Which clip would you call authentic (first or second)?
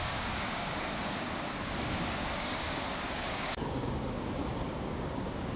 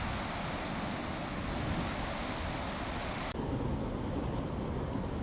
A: second